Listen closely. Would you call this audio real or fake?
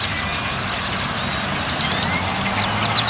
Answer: real